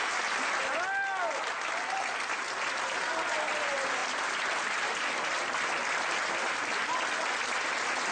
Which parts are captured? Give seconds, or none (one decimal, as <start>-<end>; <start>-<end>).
0.0-4.0; 5.0-8.1